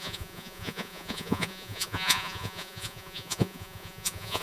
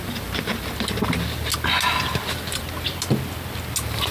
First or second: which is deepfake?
first